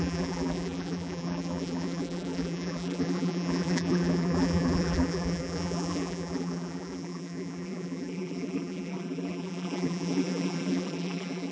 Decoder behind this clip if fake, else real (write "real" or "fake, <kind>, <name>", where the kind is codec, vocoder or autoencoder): fake, vocoder, BigVGAN v2